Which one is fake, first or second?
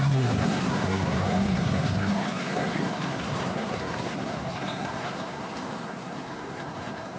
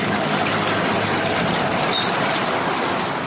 first